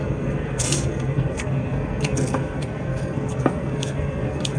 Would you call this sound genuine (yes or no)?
no